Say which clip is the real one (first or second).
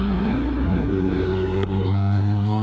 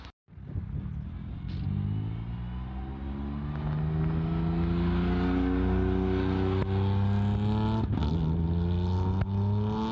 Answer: second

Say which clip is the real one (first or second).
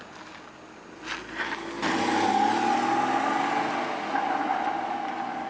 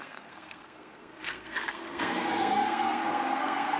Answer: first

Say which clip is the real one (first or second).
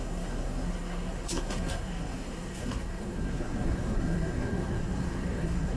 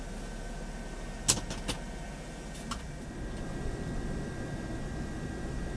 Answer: second